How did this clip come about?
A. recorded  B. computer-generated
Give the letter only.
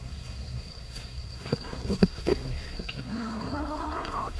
B